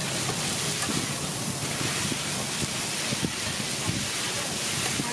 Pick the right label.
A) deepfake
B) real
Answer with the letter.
B